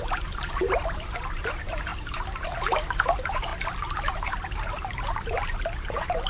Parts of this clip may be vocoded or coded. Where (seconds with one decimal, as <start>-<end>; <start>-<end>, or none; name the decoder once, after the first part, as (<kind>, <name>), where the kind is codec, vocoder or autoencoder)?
0.0-3.5 (vocoder, BigVGAN v2); 4.0-6.3